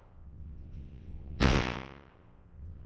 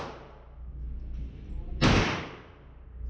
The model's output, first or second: first